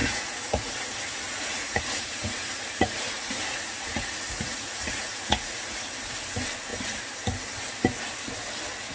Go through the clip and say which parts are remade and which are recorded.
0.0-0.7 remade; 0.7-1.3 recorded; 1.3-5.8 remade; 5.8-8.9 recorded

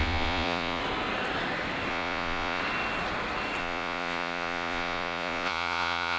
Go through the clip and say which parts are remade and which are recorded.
0.0-0.8 remade; 0.8-1.9 recorded; 1.9-2.6 remade; 2.6-3.6 recorded; 3.6-6.2 remade

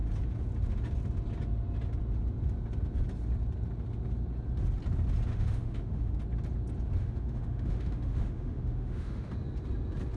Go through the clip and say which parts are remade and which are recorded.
0.0-5.3 recorded; 5.3-6.2 remade; 6.2-7.0 recorded; 7.0-9.3 remade; 9.3-10.2 recorded

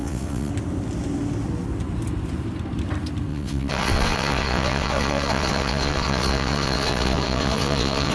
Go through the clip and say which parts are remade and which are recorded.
0.0-0.5 remade; 0.5-3.3 recorded; 3.3-8.1 remade

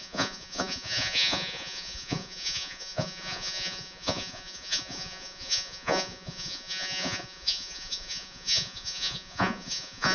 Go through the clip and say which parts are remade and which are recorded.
0.0-10.1 remade